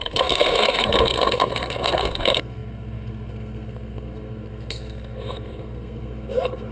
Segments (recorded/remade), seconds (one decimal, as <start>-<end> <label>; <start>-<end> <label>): 0.0-6.7 remade

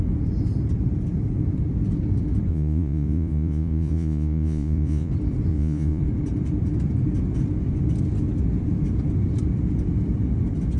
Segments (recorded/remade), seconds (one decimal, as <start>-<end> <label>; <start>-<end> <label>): 0.0-2.5 recorded; 2.5-5.1 remade; 5.1-5.5 recorded; 5.5-6.0 remade; 6.0-10.8 recorded

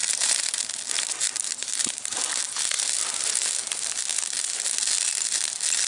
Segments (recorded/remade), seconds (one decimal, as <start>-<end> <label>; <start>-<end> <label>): 0.0-0.6 remade; 0.6-1.6 recorded; 1.6-2.2 remade; 2.2-5.9 recorded

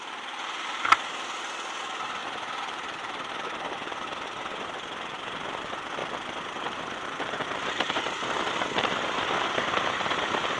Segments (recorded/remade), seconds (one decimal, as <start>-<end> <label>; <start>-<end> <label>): 0.0-2.2 recorded; 2.2-3.7 remade; 3.7-6.0 recorded; 6.0-10.6 remade

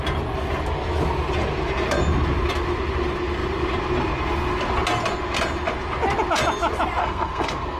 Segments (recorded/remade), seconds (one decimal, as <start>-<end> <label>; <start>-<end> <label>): 0.0-7.0 recorded; 7.0-7.8 remade

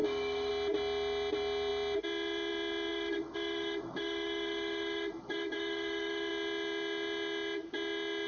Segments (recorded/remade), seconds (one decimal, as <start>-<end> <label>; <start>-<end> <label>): 0.0-0.5 remade; 0.5-2.9 recorded; 2.9-6.3 remade; 6.3-8.3 recorded